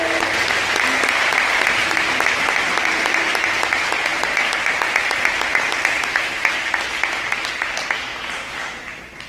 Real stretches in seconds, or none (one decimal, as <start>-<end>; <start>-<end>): 0.0-1.8; 3.6-4.1; 4.8-9.3